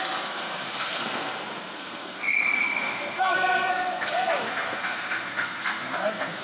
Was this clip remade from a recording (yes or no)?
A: yes